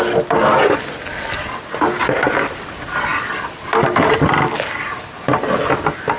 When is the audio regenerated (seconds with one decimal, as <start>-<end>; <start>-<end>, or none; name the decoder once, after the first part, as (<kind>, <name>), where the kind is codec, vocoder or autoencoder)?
none